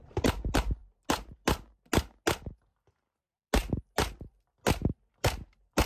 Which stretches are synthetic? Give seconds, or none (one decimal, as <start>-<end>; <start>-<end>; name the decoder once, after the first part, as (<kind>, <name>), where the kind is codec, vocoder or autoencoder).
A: none